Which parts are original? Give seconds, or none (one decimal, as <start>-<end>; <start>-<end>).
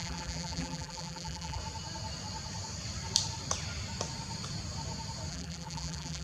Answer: 1.6-5.3